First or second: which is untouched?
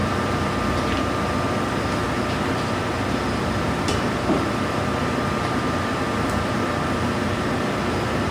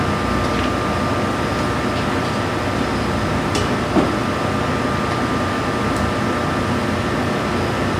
second